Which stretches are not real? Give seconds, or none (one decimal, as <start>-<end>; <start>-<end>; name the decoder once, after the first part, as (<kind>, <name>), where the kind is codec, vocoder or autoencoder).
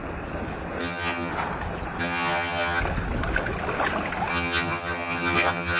0.8-1.3 (vocoder, HiFi-GAN); 2.0-2.8; 4.3-5.8